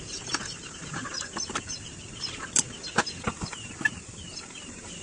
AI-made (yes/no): yes